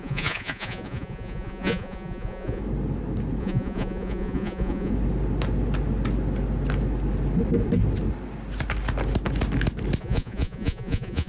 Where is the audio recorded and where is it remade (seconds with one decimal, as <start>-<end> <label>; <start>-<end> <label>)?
0.0-2.6 remade; 2.6-3.4 recorded; 3.4-4.9 remade; 4.9-10.0 recorded; 10.0-11.3 remade